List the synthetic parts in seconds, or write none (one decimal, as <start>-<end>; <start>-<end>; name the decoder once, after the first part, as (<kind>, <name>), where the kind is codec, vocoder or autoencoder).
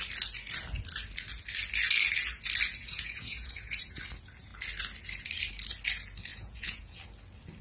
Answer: 2.8-4.0 (vocoder, Vocos); 6.3-7.0